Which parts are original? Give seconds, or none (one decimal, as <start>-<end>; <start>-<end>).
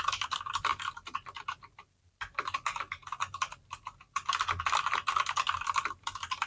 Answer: 0.0-6.5